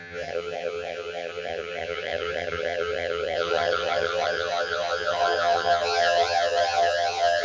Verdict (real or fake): fake